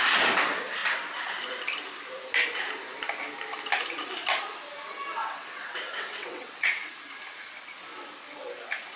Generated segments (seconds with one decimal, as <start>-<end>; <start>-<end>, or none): 5.2-6.9